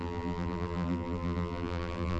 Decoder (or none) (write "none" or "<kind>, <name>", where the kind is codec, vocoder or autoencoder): vocoder, BigVGAN v2